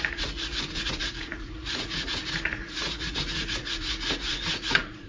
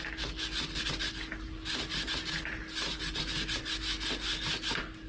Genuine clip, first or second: second